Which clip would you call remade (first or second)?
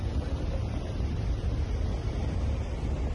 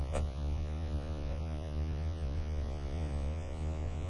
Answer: second